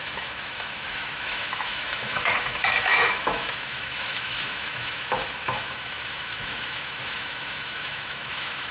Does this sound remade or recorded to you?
remade